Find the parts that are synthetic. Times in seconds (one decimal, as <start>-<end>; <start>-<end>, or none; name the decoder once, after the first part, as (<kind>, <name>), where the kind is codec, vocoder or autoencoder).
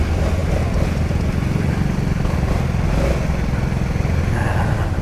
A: none